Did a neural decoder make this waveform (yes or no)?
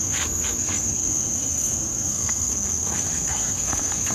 yes